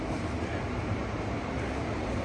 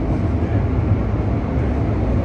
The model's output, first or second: first